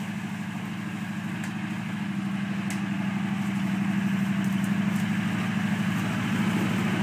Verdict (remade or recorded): recorded